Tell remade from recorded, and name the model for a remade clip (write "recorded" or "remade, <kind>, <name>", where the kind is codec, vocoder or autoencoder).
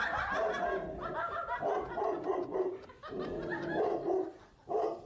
recorded